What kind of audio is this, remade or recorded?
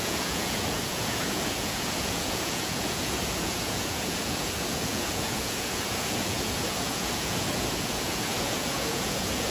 remade